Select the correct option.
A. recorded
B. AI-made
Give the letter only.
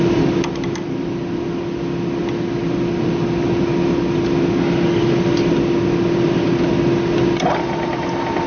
A